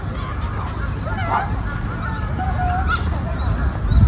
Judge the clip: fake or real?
real